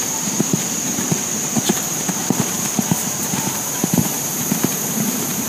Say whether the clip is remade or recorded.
remade